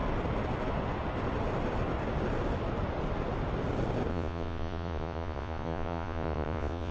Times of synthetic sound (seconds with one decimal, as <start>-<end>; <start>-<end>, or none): 4.1-6.9